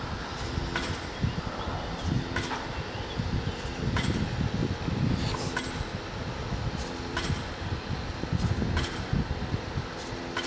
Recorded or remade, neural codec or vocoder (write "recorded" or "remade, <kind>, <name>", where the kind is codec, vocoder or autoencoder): recorded